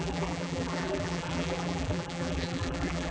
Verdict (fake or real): fake